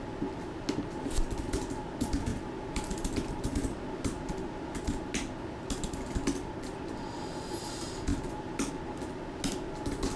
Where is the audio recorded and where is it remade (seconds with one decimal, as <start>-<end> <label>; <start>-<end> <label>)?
0.0-10.2 recorded